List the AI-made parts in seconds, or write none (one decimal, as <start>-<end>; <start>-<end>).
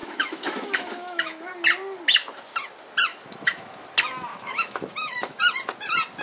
0.0-1.5; 3.1-3.8; 4.3-5.4